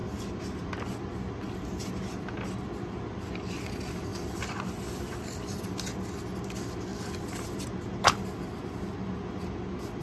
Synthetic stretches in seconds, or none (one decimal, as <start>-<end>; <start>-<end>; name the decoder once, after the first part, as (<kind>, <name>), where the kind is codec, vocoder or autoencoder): 4.1-5.6 (vocoder, BigVGAN v2)